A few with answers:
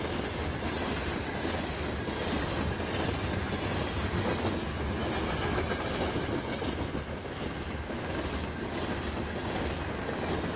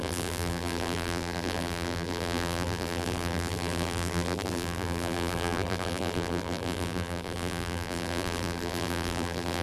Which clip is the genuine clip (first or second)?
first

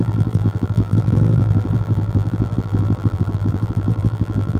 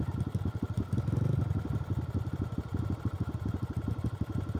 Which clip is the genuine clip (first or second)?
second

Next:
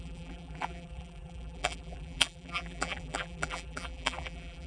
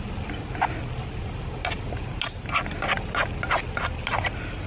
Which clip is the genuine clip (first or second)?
second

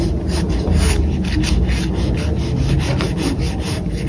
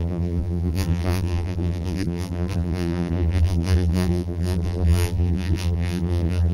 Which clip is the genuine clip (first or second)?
first